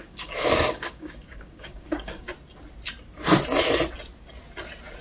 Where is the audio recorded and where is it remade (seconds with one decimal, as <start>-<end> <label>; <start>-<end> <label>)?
0.0-2.3 remade; 2.3-5.0 recorded